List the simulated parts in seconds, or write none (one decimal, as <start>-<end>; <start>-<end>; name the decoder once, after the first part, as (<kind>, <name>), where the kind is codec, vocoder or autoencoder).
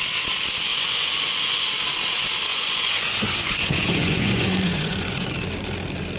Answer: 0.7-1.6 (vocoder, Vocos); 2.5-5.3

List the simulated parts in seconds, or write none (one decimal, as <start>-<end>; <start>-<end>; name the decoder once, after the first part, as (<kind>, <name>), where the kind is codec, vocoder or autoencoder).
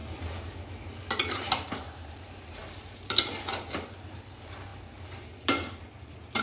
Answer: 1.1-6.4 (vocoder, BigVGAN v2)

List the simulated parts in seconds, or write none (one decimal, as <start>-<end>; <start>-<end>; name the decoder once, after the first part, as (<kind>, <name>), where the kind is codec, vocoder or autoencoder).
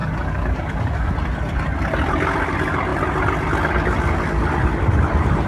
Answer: 0.0-1.1 (codec, DAC)